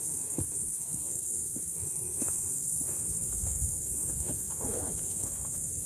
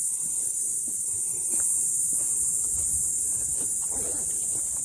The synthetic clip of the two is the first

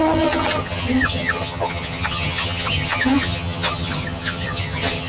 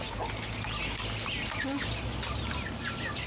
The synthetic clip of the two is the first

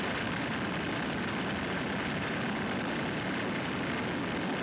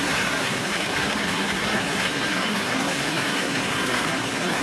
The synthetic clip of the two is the second